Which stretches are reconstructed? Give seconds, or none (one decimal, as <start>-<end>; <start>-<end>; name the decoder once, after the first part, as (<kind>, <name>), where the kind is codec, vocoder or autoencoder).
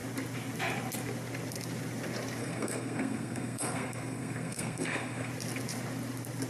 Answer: 2.4-5.3 (codec, SNAC)